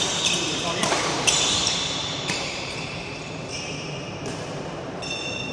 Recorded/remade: remade